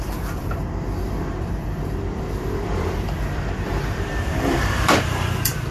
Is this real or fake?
fake